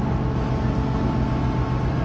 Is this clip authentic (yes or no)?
yes